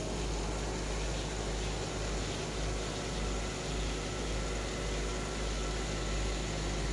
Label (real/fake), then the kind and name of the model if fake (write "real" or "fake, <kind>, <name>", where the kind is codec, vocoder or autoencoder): real